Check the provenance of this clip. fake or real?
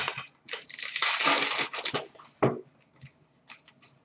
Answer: real